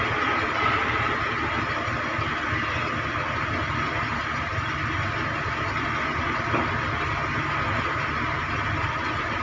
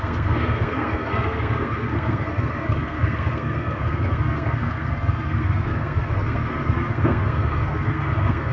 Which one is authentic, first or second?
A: first